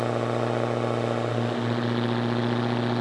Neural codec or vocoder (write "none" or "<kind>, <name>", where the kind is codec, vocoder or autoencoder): none